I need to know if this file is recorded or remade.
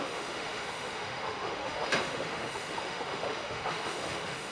remade